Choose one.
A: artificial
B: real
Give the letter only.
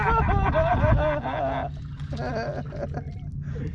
B